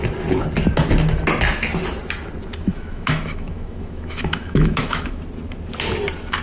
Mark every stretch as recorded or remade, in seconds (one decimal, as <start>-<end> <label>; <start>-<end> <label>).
0.0-2.7 recorded; 2.7-5.2 remade; 5.2-6.4 recorded